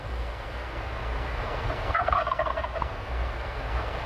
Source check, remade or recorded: remade